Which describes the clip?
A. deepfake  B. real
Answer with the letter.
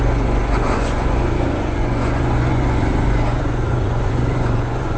A